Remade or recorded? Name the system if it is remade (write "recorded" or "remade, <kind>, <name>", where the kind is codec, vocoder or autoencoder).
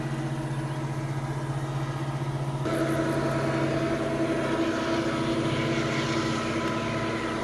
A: recorded